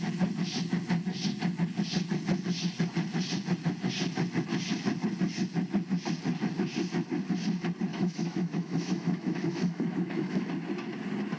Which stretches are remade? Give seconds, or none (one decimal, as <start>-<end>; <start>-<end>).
7.9-10.5